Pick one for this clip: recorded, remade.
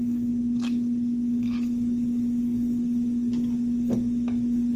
remade